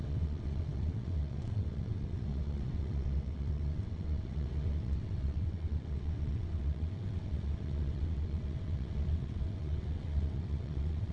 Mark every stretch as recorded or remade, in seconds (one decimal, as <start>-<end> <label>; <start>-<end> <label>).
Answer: 0.0-11.1 remade